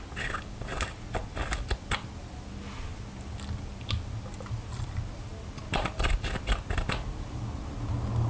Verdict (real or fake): real